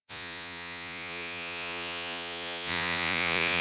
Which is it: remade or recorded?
remade